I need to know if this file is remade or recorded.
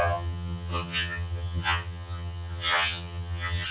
remade